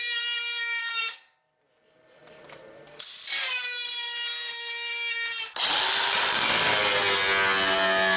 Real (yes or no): yes